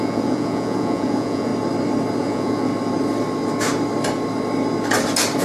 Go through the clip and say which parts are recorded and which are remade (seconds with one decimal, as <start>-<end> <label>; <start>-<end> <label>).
0.0-1.5 remade; 1.5-2.2 recorded; 2.2-2.7 remade; 2.7-5.4 recorded